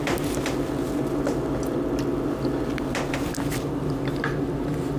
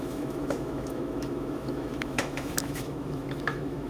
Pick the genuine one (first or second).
first